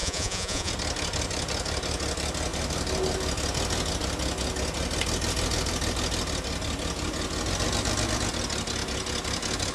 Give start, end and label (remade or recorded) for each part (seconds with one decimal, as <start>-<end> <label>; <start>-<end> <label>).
0.0-0.7 remade; 0.7-9.7 recorded